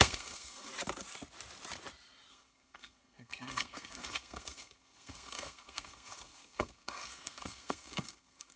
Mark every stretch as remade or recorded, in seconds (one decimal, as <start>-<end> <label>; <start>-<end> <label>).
0.0-0.7 remade; 0.7-2.3 recorded; 2.3-8.6 remade